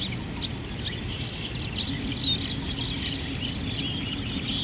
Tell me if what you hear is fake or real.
real